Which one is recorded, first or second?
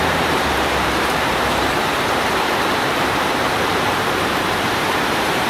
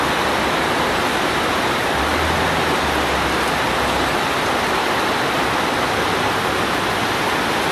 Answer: second